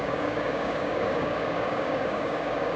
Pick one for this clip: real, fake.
fake